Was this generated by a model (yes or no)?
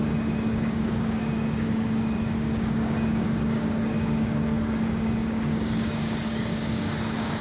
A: yes